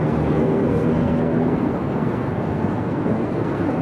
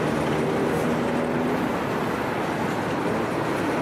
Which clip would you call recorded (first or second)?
second